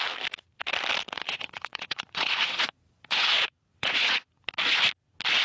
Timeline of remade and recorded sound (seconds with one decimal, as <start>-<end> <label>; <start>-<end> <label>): 0.0-1.2 recorded; 1.2-4.4 remade; 4.4-5.4 recorded